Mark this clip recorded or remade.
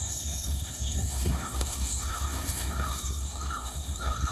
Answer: remade